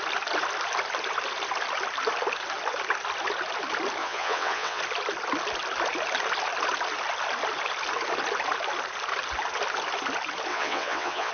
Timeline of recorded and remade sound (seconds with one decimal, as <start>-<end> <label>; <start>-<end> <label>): 0.0-4.0 recorded; 4.0-4.8 remade; 4.8-10.5 recorded; 10.5-11.3 remade